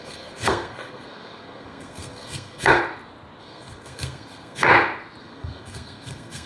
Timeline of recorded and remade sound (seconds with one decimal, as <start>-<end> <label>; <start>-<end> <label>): 0.0-2.8 remade; 2.8-3.4 recorded; 3.4-4.7 remade; 4.7-5.2 recorded; 5.2-6.5 remade